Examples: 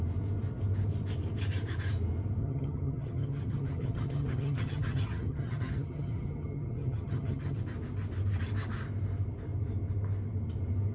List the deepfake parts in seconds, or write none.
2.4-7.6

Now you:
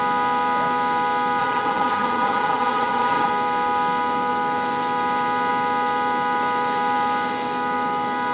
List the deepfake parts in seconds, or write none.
1.4-3.3